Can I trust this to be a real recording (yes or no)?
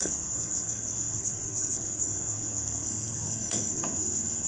no